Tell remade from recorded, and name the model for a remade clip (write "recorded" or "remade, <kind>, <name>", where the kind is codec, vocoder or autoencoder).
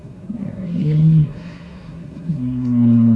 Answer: remade, codec, SNAC